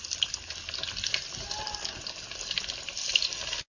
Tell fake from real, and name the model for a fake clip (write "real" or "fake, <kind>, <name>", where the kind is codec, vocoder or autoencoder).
real